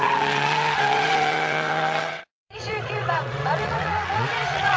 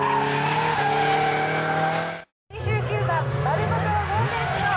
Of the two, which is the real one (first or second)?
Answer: second